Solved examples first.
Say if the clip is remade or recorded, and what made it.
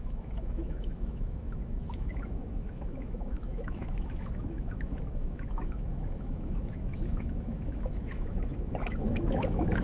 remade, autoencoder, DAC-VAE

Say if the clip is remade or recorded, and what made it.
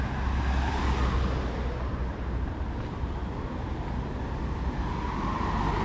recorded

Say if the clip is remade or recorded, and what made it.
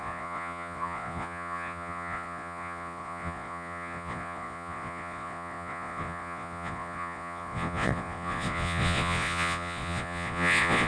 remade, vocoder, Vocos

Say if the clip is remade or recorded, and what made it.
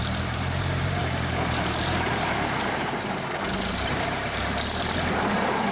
remade, vocoder, BigVGAN v2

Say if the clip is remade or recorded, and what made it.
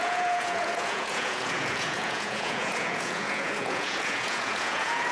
remade, vocoder, Vocos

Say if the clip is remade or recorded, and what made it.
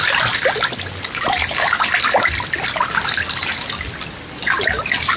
recorded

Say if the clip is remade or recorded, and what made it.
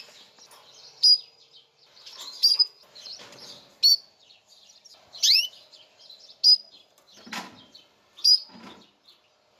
recorded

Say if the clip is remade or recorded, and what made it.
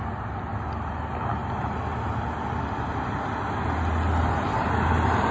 recorded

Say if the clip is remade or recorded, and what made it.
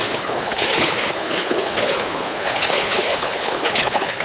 remade, codec, HILCodec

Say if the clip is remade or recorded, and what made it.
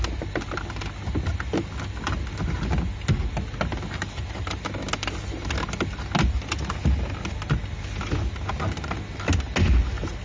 recorded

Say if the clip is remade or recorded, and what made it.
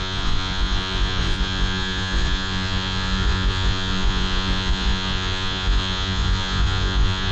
remade, vocoder, Vocos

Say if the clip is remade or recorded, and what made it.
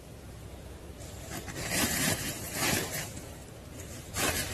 remade, vocoder, BigVGAN v2